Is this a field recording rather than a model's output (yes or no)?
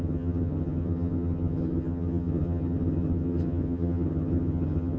no